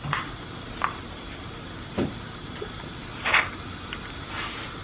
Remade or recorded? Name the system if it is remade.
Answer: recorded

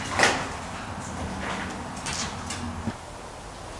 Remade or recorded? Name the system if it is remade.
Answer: recorded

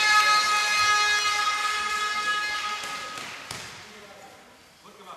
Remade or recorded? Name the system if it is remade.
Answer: recorded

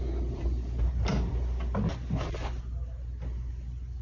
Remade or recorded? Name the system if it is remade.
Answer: recorded